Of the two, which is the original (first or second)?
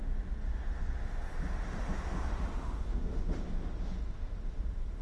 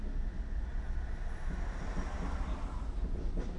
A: second